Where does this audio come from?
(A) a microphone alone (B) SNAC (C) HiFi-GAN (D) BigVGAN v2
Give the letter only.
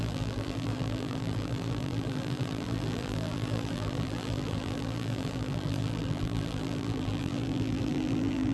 D